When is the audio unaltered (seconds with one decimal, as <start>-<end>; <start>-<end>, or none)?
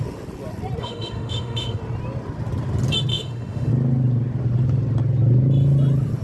0.0-0.8; 1.8-3.1; 3.7-6.2